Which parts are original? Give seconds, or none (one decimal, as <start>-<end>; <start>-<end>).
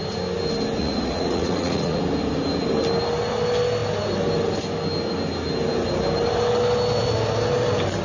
0.0-0.8; 2.0-8.0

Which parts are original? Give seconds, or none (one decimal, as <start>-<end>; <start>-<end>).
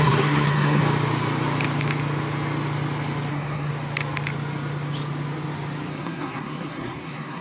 0.8-3.3; 3.7-5.9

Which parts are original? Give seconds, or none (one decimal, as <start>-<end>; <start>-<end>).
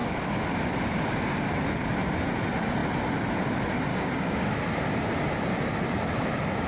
0.0-3.9; 4.5-6.7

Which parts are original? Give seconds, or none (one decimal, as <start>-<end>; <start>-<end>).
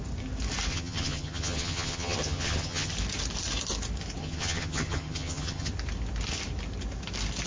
0.0-0.7; 2.9-4.2; 5.7-7.5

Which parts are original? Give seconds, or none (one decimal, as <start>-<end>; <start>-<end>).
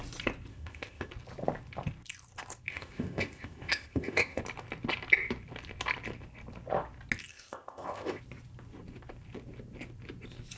0.0-0.5; 1.1-2.7; 4.4-7.3; 8.2-10.6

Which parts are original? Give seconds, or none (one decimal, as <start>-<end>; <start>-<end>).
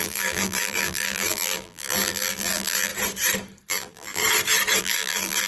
2.9-3.7; 4.2-4.8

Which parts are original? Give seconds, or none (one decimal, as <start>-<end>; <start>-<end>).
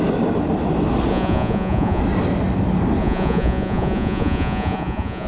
0.0-1.1; 2.0-3.0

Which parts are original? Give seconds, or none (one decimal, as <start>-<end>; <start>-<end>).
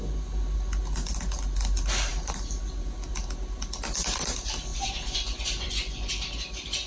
0.0-4.7; 6.1-6.9